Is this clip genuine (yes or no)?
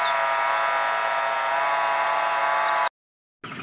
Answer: yes